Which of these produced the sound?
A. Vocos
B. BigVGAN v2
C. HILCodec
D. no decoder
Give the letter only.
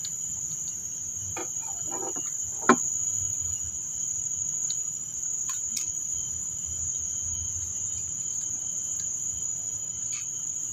D